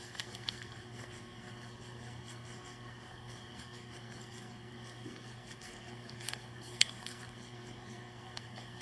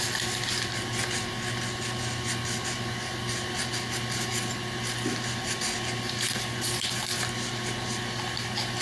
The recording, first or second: second